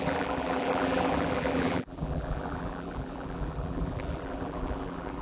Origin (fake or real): fake